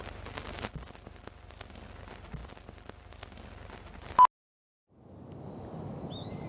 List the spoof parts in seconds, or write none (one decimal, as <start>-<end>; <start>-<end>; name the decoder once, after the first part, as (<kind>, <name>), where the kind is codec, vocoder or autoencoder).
none